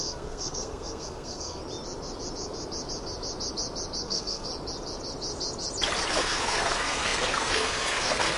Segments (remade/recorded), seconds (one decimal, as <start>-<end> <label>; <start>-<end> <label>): 0.0-1.6 remade; 1.6-4.0 recorded; 4.0-4.5 remade; 4.5-6.1 recorded; 6.1-8.4 remade